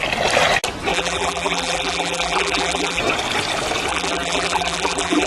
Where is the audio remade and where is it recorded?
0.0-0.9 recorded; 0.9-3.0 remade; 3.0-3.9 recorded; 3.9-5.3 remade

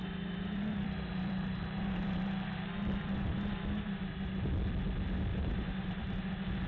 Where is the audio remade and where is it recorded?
0.0-4.0 remade; 4.0-5.3 recorded; 5.3-6.3 remade; 6.3-6.7 recorded

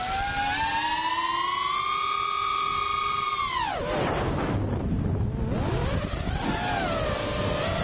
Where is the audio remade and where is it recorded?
0.0-2.5 recorded; 2.5-3.9 remade; 3.9-5.8 recorded; 5.8-7.8 remade

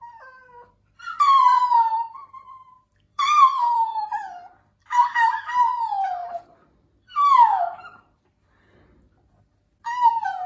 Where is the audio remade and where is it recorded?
0.0-1.5 recorded; 1.5-5.1 remade; 5.1-6.2 recorded; 6.2-9.0 remade; 9.0-10.5 recorded